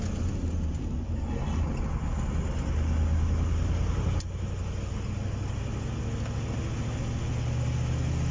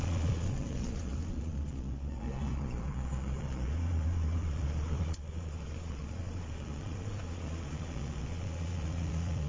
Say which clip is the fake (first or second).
second